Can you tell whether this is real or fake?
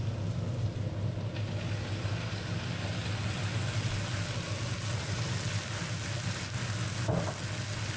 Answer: real